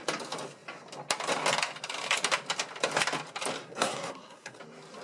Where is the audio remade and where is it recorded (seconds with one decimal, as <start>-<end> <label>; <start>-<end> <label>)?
0.0-3.6 recorded; 3.6-4.6 remade; 4.6-5.0 recorded